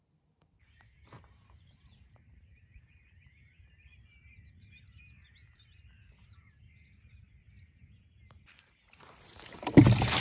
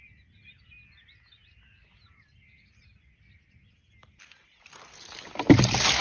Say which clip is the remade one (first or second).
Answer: first